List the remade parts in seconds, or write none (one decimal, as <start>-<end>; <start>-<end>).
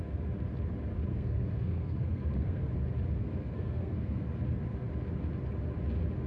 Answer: 1.1-2.7; 3.2-4.2